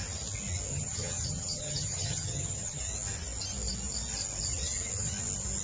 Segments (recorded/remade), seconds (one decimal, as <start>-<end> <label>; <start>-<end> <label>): 0.0-0.7 recorded; 0.7-2.8 remade; 2.8-5.6 recorded